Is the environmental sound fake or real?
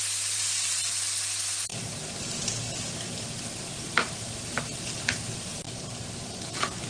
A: real